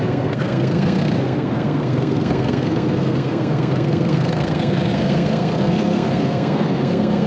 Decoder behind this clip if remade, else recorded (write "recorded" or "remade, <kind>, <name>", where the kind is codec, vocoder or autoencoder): remade, codec, SNAC